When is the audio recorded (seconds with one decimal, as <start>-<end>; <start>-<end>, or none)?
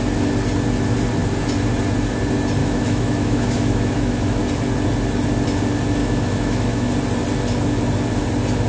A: 0.0-2.6; 4.4-6.0; 6.9-8.7